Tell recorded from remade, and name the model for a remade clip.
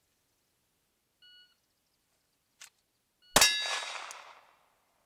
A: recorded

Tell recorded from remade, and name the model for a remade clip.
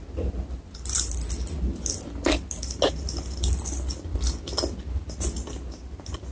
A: recorded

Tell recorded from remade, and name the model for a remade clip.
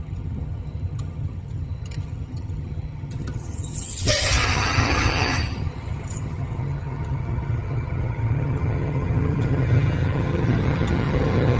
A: remade, vocoder, HiFi-GAN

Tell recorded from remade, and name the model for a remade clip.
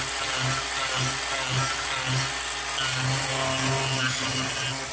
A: recorded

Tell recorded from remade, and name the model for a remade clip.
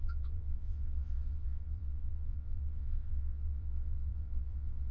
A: remade, vocoder, WaveNeXt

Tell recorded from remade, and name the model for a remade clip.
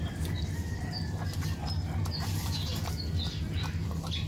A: recorded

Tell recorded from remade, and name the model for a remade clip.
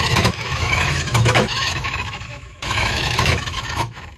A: remade, autoencoder, DAC-VAE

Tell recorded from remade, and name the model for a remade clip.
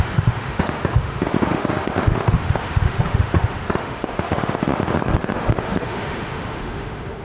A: remade, autoencoder, DAC-VAE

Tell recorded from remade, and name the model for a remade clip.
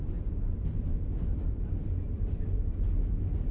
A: recorded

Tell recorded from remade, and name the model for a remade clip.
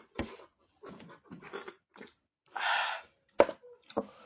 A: recorded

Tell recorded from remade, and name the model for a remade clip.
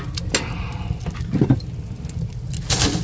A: recorded